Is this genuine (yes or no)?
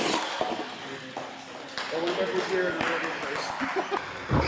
yes